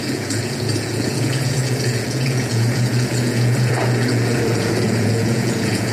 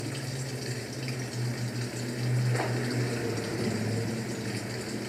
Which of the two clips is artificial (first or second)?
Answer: first